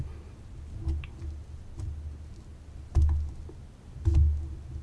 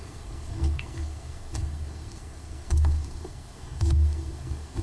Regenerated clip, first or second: second